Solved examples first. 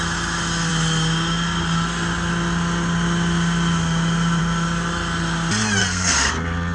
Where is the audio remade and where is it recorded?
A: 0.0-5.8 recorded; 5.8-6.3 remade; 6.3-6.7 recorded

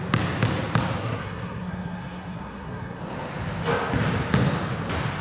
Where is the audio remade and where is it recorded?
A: 0.0-1.0 recorded; 1.0-3.0 remade; 3.0-5.2 recorded

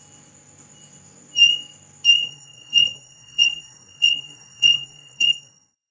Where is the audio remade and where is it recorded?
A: 0.0-2.2 recorded; 2.2-5.9 remade

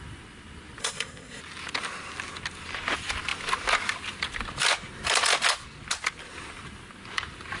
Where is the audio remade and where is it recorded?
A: 0.0-0.8 recorded; 0.8-1.4 remade; 1.4-7.6 recorded

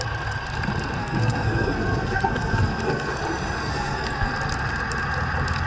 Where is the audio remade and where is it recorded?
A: 0.0-1.0 recorded; 1.0-3.2 remade; 3.2-3.6 recorded; 3.6-4.3 remade; 4.3-5.7 recorded

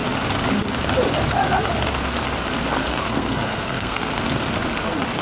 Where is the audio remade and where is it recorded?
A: 0.0-2.9 recorded; 2.9-4.2 remade; 4.2-5.2 recorded